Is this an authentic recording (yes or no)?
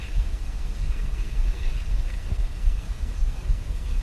no